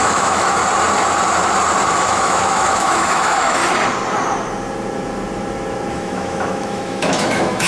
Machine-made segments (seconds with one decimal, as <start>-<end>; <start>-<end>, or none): 0.0-0.6; 1.9-3.6; 5.9-7.7